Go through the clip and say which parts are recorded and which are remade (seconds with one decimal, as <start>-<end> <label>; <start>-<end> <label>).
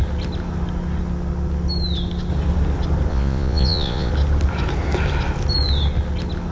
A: 0.0-3.1 recorded; 3.1-4.1 remade; 4.1-6.5 recorded